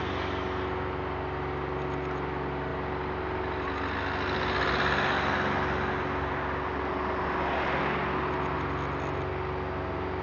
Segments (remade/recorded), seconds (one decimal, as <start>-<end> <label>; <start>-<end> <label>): 0.0-10.2 recorded